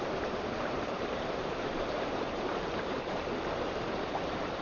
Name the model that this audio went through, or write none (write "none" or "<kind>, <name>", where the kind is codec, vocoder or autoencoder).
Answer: vocoder, BigVGAN v2